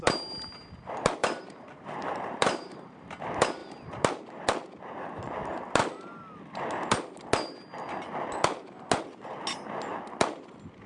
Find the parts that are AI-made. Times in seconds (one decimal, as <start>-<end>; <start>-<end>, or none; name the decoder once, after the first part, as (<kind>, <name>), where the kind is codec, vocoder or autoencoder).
1.2-3.2 (vocoder, BigVGAN v2)